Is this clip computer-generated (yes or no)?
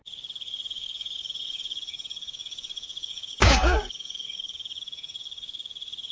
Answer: yes